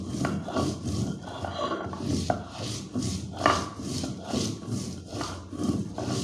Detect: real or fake real